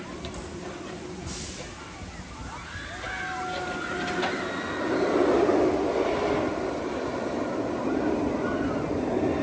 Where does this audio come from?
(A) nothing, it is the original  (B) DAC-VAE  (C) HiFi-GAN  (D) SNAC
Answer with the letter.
A